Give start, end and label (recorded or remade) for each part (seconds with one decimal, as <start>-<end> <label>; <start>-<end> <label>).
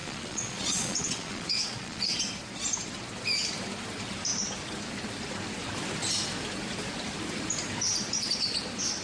0.0-2.2 remade; 2.2-9.0 recorded